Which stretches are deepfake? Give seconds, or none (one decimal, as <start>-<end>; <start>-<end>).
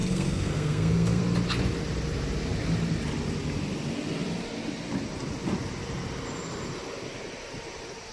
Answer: 0.0-1.2